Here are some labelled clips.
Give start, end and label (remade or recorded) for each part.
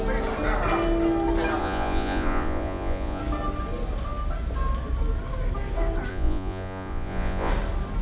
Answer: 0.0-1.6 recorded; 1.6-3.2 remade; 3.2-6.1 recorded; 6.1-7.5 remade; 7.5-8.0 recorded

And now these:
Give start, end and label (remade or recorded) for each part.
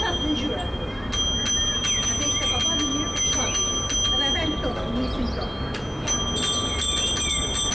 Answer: 0.0-7.7 recorded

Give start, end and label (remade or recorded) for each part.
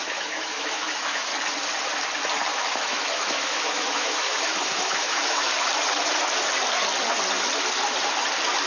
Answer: 0.0-1.3 remade; 1.3-2.5 recorded; 2.5-5.5 remade; 5.5-8.7 recorded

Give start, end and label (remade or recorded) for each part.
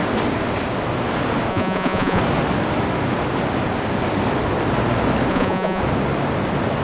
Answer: 0.0-1.5 recorded; 1.5-2.2 remade; 2.2-5.3 recorded; 5.3-5.8 remade; 5.8-6.8 recorded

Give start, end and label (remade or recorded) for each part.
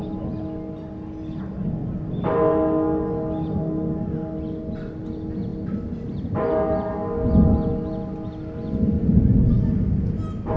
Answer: 0.0-10.6 recorded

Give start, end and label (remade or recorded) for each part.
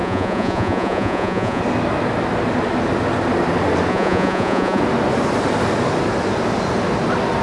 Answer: 0.0-1.6 remade; 1.6-3.9 recorded; 3.9-4.8 remade; 4.8-7.4 recorded